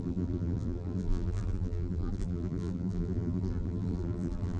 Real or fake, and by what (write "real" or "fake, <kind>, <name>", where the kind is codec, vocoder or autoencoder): fake, vocoder, BigVGAN v2